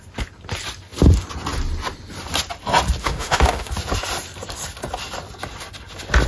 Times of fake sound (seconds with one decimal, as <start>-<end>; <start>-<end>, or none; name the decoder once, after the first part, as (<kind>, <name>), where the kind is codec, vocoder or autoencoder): 3.0-3.7 (autoencoder, DAC-VAE)